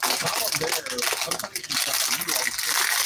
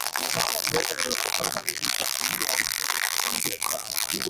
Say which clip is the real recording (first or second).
first